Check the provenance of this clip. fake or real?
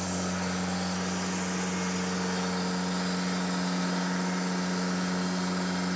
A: real